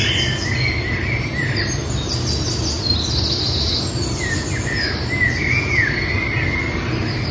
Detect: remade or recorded recorded